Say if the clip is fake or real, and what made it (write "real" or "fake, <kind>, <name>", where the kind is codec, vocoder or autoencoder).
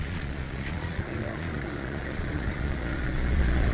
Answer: fake, vocoder, Vocos